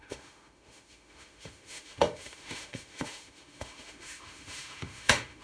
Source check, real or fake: fake